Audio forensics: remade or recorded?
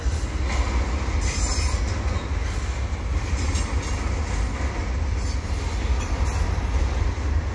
recorded